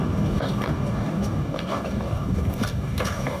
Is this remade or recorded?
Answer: remade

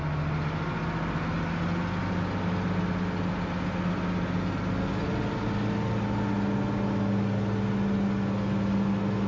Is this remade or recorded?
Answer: recorded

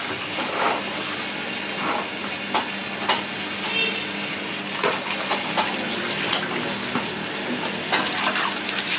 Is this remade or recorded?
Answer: recorded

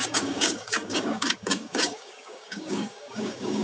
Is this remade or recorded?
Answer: remade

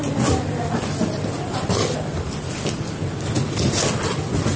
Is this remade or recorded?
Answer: recorded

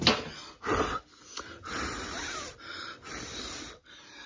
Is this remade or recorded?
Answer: recorded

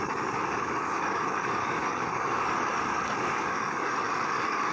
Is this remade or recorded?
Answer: remade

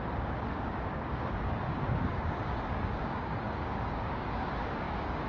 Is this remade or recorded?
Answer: remade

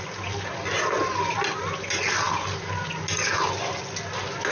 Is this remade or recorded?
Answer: recorded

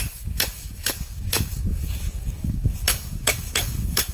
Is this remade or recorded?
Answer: remade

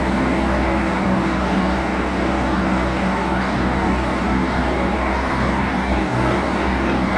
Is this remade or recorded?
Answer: remade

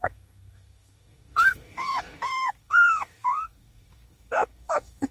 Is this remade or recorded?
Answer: remade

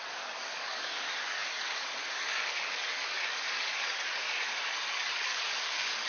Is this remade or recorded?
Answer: remade